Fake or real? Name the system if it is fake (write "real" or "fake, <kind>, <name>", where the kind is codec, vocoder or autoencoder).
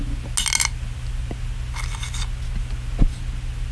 real